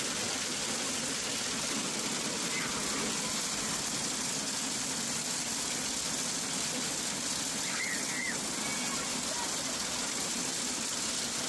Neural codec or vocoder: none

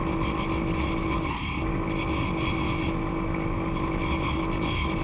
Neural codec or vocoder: none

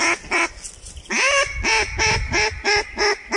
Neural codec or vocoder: none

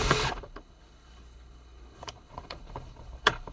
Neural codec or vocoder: codec, HILCodec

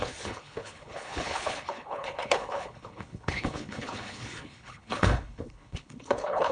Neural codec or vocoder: codec, HILCodec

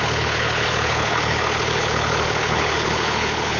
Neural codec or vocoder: codec, HILCodec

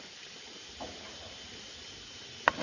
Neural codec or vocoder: none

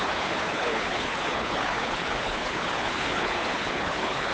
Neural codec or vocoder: codec, HILCodec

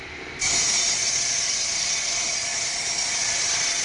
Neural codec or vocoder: none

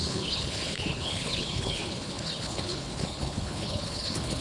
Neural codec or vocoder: codec, HILCodec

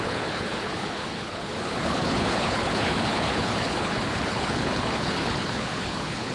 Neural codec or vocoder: codec, HILCodec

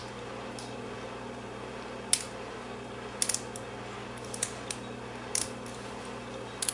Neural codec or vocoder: none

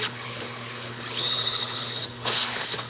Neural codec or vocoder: codec, HILCodec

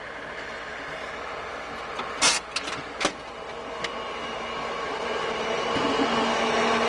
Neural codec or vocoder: none